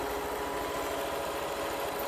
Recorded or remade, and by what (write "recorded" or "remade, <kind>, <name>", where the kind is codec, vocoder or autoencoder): recorded